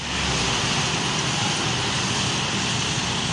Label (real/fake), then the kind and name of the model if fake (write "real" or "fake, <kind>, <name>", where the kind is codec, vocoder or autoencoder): real